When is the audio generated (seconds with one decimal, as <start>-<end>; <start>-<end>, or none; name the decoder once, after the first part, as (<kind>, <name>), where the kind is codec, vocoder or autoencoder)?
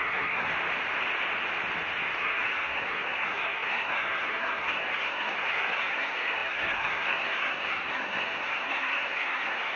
0.0-0.5 (codec, SNAC); 2.2-9.8